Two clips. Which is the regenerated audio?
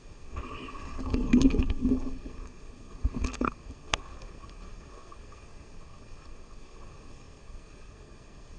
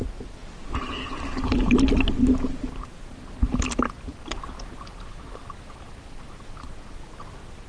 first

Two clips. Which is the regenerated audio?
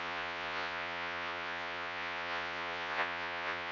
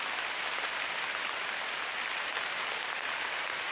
first